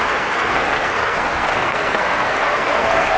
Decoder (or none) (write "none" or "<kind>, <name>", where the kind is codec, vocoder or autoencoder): codec, SNAC